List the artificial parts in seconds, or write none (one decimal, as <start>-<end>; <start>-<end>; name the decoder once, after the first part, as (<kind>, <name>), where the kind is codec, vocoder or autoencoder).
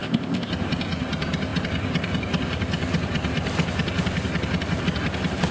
0.0-0.5 (codec, ZipCodec)